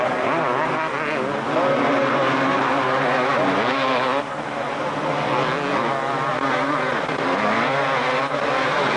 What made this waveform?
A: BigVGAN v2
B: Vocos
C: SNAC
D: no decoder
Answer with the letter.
D